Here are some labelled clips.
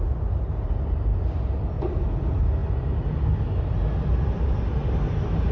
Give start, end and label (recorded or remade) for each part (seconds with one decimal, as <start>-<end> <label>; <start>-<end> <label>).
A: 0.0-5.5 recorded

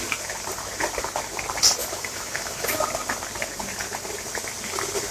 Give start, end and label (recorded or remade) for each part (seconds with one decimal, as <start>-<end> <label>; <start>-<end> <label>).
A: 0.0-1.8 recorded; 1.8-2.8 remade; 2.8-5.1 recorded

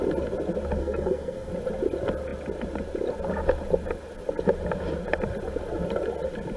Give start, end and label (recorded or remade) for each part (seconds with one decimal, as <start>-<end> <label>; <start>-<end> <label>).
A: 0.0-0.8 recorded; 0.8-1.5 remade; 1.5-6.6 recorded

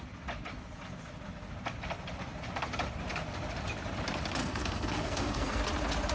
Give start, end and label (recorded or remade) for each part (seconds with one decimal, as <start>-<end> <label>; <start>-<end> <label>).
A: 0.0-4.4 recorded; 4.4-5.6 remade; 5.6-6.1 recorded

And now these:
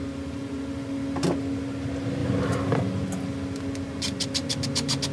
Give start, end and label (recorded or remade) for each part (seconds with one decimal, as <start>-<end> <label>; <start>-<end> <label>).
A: 0.0-5.1 recorded

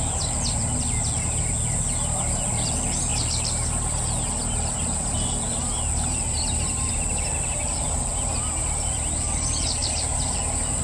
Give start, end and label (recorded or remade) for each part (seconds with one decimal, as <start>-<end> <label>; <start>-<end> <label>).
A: 0.0-10.8 recorded

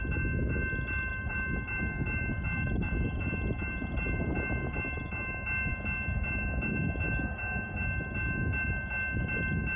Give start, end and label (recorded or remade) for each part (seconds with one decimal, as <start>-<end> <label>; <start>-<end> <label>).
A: 0.0-1.1 recorded; 1.1-5.3 remade; 5.3-9.8 recorded

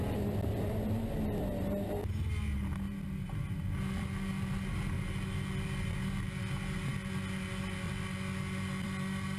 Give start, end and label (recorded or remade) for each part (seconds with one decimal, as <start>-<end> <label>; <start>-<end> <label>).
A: 0.0-9.4 recorded